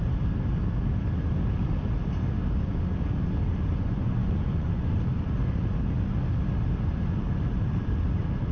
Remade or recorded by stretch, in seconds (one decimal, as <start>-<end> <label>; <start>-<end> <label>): 0.0-3.7 recorded; 3.7-4.9 remade; 4.9-8.5 recorded